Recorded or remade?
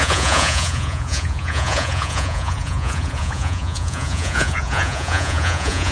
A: remade